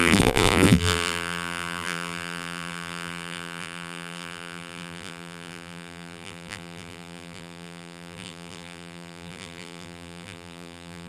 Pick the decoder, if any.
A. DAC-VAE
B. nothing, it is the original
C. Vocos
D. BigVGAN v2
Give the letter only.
D